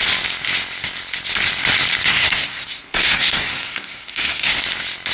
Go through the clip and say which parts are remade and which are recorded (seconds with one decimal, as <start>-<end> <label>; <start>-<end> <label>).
0.0-2.1 recorded; 2.1-4.6 remade; 4.6-5.1 recorded